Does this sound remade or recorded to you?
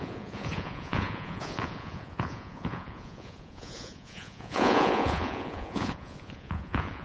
remade